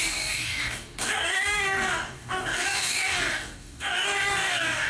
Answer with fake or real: fake